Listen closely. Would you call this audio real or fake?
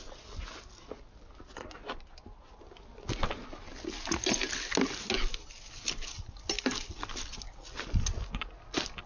real